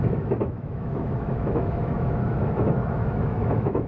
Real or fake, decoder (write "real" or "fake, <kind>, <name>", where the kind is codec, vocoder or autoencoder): fake, autoencoder, DAC-VAE